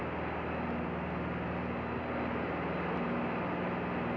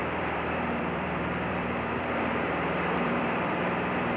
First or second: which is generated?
second